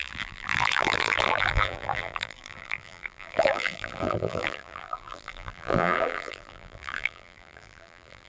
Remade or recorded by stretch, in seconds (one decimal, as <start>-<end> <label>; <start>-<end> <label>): 0.0-8.3 remade